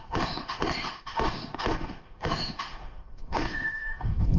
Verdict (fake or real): fake